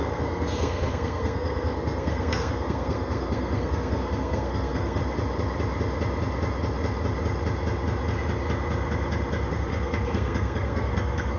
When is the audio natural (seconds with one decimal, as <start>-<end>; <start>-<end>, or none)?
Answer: 5.0-9.5